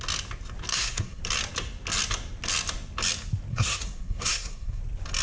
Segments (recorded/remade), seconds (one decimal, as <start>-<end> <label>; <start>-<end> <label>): 0.0-0.7 recorded; 0.7-1.2 remade; 1.2-3.5 recorded; 3.5-4.8 remade; 4.8-5.2 recorded